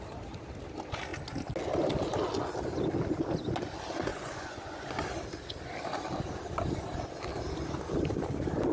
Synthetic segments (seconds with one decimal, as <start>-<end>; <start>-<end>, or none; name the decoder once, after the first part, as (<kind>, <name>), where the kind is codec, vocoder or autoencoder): 4.1-5.0 (vocoder, Vocos)